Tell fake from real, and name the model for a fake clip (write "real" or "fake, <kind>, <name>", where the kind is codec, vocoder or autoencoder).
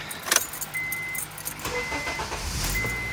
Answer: real